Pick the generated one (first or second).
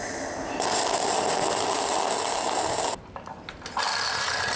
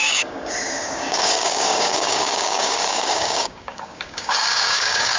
second